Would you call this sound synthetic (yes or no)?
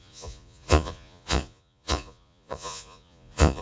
yes